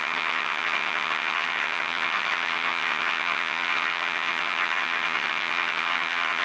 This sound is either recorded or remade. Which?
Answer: remade